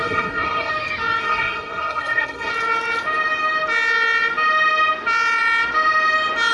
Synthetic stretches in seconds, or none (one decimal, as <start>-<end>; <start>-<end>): 0.0-0.7; 1.2-2.5